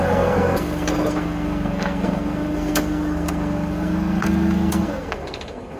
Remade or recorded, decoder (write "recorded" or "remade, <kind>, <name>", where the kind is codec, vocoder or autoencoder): remade, codec, SNAC